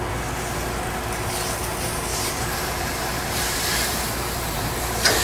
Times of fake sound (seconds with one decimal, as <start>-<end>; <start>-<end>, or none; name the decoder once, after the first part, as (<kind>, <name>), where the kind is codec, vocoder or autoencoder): 2.1-5.2 (vocoder, BigVGAN v2)